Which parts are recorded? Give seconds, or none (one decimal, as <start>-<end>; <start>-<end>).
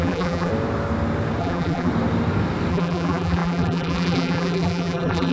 0.5-1.4; 1.9-2.7